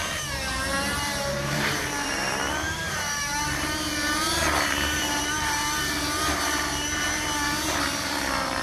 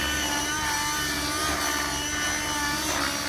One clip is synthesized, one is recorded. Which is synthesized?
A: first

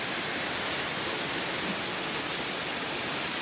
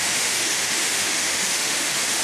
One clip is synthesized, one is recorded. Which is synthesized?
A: second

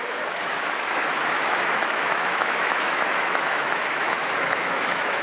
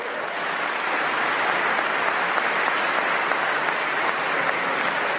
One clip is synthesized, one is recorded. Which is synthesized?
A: first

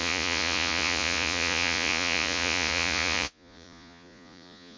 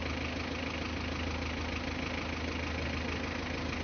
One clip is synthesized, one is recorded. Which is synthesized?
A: first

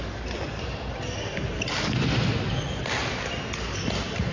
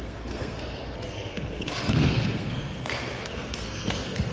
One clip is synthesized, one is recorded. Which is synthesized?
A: second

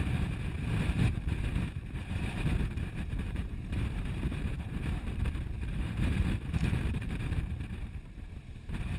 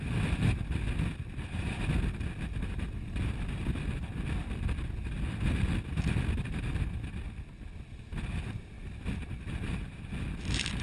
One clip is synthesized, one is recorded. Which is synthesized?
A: first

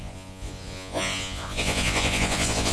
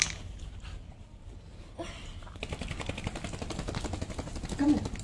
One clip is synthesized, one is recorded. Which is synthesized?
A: first